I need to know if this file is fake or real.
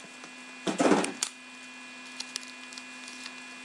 real